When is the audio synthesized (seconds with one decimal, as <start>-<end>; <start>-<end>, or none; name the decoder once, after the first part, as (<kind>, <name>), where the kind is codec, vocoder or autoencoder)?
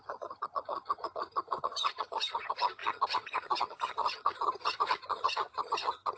0.0-6.2 (vocoder, HiFi-GAN)